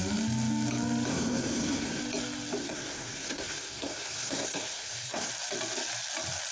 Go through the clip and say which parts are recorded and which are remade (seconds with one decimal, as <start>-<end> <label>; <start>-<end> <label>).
0.0-1.1 recorded; 1.1-2.0 remade; 2.0-2.6 recorded; 2.6-5.3 remade; 5.3-6.5 recorded